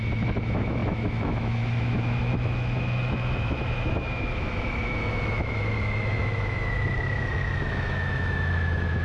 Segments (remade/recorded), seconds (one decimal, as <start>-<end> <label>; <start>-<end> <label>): 0.0-9.0 remade